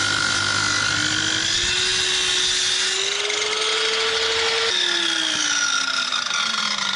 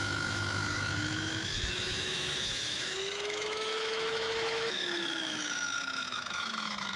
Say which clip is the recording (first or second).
first